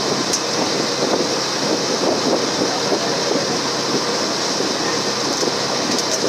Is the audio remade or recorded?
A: recorded